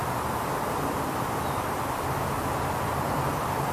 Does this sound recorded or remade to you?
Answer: remade